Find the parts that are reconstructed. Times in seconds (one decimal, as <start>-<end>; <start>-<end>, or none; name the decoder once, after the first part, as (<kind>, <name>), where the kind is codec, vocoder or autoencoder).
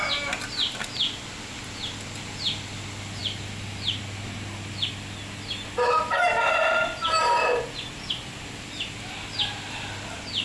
none